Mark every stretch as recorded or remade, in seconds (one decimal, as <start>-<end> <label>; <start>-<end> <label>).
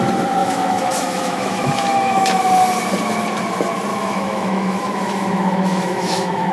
0.0-0.4 recorded; 0.4-2.4 remade; 2.4-3.9 recorded; 3.9-6.5 remade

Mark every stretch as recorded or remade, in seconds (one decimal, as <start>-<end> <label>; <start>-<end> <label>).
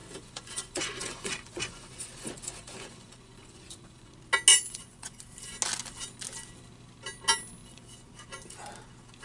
0.0-4.1 remade; 4.1-4.5 recorded; 4.5-5.2 remade; 5.2-7.6 recorded; 7.6-8.1 remade; 8.1-9.2 recorded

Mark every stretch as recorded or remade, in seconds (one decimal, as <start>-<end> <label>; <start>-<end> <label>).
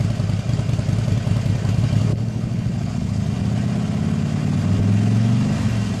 0.0-2.1 recorded; 2.1-3.2 remade; 3.2-6.0 recorded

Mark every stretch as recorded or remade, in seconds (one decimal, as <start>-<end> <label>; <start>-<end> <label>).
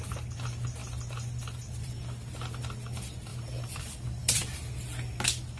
0.0-0.8 recorded; 0.8-2.6 remade; 2.6-3.3 recorded; 3.3-3.8 remade; 3.8-4.2 recorded; 4.2-5.1 remade; 5.1-5.6 recorded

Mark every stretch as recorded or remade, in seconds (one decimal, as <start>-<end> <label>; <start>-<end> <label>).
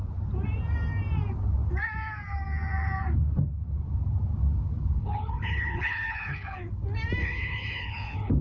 0.0-5.0 recorded; 5.0-6.6 remade; 6.6-7.2 recorded; 7.2-8.4 remade